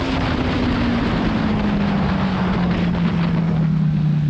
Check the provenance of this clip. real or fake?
real